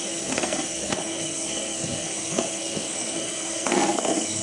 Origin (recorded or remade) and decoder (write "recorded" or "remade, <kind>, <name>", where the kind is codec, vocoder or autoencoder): remade, codec, SNAC